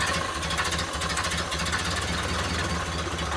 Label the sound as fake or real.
real